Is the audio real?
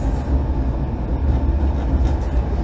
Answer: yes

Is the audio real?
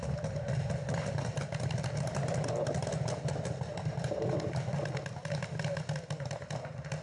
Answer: yes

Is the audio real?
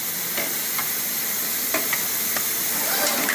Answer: yes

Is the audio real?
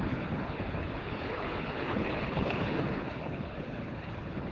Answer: no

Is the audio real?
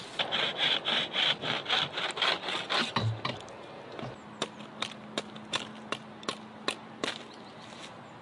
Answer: yes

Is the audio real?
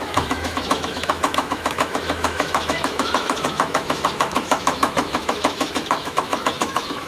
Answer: no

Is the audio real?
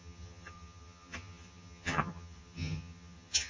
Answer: no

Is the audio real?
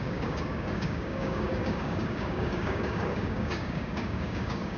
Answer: no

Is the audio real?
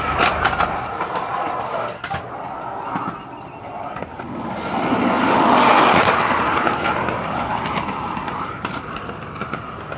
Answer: yes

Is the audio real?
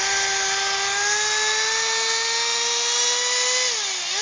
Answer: yes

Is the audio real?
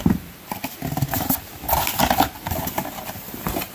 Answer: yes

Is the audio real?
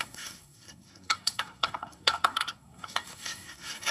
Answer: no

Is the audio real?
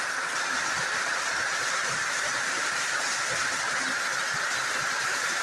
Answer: no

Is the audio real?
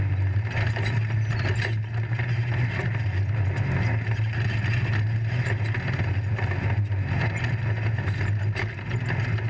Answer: yes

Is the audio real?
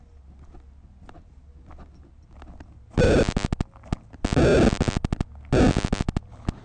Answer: yes